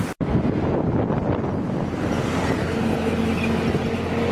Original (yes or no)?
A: yes